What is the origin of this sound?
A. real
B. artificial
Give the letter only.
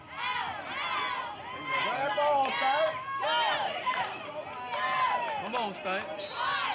A